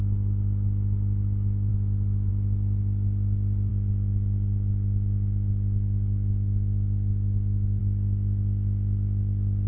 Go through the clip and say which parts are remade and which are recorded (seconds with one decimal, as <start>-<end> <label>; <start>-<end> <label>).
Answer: 0.0-9.7 recorded